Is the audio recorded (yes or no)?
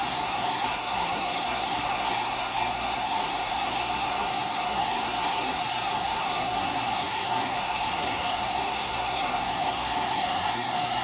no